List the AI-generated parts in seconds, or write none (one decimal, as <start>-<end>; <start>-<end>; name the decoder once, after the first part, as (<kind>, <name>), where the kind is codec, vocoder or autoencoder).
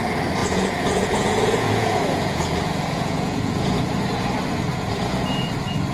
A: 0.4-3.9 (vocoder, Vocos); 4.7-5.5